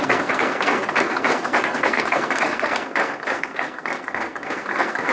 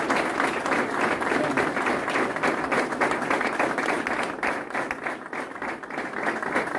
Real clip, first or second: second